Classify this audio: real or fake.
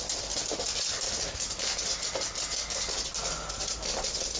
real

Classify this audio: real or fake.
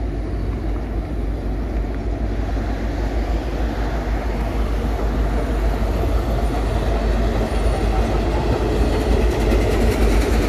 real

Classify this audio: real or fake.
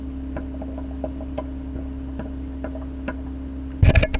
real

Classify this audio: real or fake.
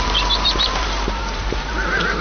fake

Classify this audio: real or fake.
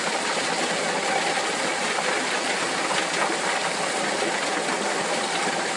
real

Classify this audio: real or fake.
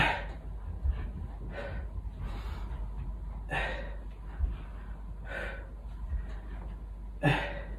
real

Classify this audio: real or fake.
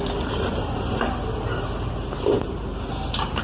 fake